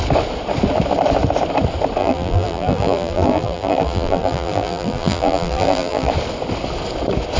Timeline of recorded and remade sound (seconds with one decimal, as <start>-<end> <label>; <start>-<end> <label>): 0.0-2.0 recorded; 2.0-6.1 remade; 6.1-7.4 recorded